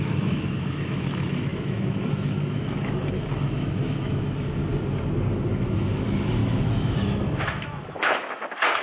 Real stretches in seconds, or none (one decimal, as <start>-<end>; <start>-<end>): 4.6-5.5

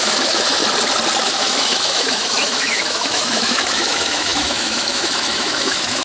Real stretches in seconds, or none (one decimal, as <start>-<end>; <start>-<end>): 0.6-1.2

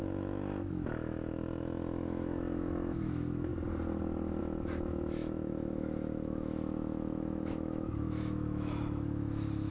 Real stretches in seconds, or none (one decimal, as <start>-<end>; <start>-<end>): 3.5-4.4

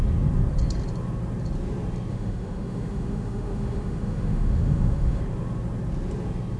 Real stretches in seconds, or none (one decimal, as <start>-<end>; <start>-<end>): 0.0-2.1; 5.2-6.6

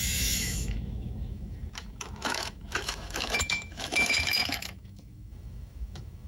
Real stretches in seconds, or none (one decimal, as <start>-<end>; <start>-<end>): none

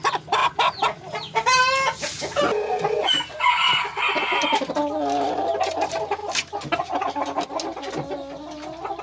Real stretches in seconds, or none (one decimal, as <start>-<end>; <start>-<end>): 0.0-9.0